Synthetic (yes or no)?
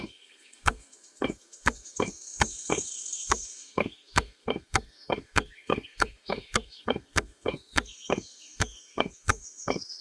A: yes